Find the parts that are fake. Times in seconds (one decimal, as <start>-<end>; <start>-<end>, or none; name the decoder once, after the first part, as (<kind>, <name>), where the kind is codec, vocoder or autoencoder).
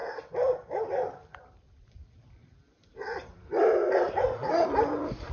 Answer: 1.3-4.5 (vocoder, BigVGAN v2)